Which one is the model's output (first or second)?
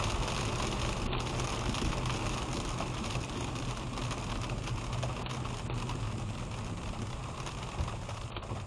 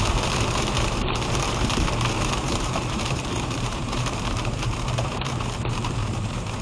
second